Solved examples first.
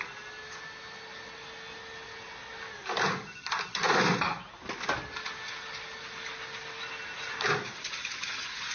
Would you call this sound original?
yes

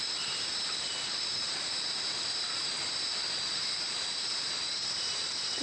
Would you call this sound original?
no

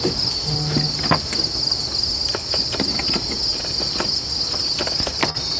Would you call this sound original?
yes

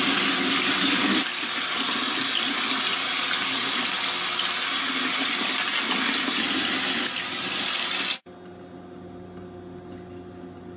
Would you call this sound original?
yes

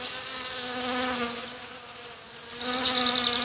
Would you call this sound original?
yes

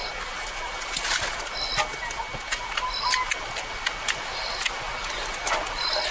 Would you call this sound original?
yes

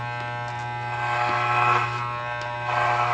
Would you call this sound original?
yes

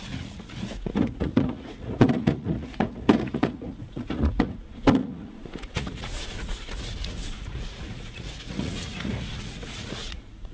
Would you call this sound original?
no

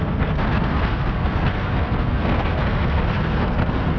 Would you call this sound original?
no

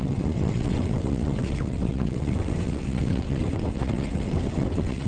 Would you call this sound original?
no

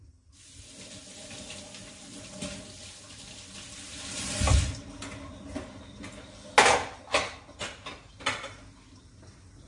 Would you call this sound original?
yes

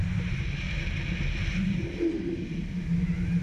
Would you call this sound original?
yes